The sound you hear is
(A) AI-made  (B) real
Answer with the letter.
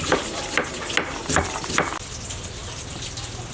B